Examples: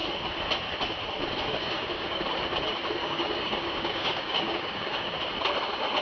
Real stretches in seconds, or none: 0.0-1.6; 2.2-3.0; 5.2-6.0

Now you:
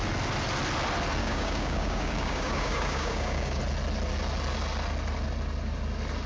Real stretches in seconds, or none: 0.0-1.2; 3.6-6.3

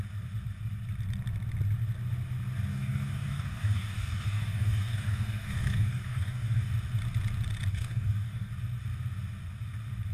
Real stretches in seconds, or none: 0.0-2.7; 6.7-7.7; 8.5-10.1

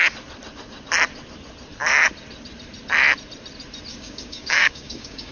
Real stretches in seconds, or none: 0.0-3.9

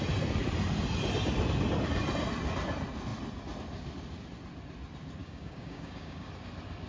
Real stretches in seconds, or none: 0.0-5.2; 6.3-6.9

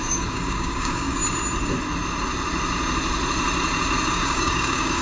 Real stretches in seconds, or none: 1.2-4.1

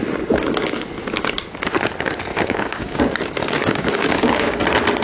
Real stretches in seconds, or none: 0.0-2.3; 3.0-3.6; 4.6-5.0

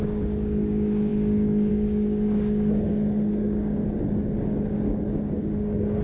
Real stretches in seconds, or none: none